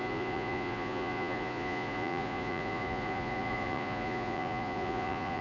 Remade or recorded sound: remade